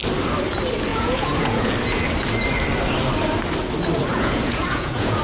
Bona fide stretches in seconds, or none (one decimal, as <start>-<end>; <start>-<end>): 0.0-0.9; 1.7-4.1